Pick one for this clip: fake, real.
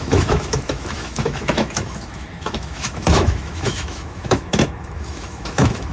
fake